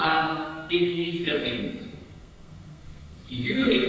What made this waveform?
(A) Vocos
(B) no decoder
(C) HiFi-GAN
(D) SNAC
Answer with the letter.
D